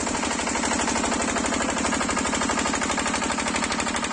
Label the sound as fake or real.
real